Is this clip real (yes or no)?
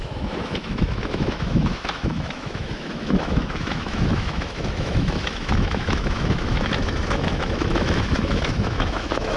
no